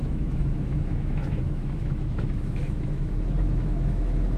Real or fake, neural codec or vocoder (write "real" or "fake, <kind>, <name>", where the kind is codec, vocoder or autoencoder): fake, autoencoder, DAC-VAE